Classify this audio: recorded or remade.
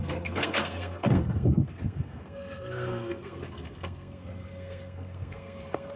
remade